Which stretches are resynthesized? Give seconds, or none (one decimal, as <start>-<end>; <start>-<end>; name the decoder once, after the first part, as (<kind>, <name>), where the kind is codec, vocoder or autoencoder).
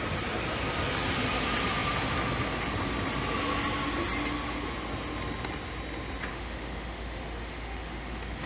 6.3-8.5 (autoencoder, DAC-VAE)